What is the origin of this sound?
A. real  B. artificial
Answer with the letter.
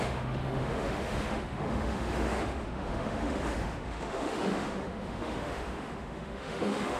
B